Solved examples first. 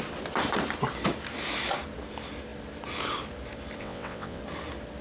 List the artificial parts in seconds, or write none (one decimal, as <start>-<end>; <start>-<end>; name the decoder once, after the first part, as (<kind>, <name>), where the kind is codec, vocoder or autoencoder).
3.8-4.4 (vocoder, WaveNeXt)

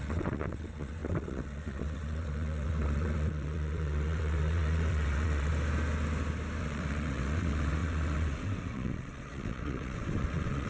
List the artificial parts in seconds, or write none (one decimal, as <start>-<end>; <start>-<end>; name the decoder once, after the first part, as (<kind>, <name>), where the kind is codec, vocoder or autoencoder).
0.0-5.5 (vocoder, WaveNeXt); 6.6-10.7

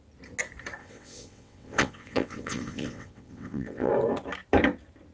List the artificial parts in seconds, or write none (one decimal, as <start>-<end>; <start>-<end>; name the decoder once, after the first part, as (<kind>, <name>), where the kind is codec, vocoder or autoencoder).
0.8-3.9 (vocoder, WaveNeXt)

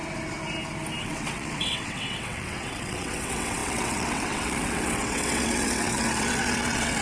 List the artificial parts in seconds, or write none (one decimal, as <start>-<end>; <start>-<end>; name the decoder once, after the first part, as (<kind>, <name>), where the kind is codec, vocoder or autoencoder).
1.0-7.0 (vocoder, WaveNeXt)